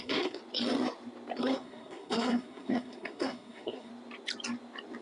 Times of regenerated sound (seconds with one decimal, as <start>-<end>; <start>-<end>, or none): 0.0-0.4; 1.4-3.9